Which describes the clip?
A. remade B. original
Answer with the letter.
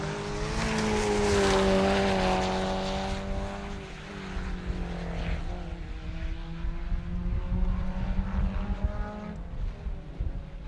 B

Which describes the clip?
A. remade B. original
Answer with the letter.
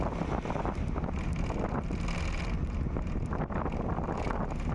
B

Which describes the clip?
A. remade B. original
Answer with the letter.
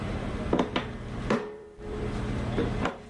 A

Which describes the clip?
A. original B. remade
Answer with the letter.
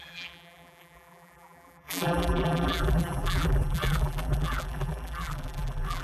B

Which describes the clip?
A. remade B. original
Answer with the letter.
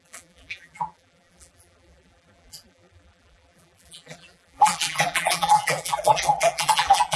A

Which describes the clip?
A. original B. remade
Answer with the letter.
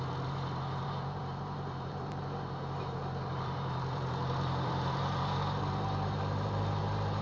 B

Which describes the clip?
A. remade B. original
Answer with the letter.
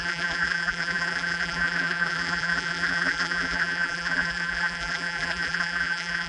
A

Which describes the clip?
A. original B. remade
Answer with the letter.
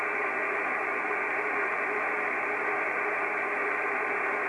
A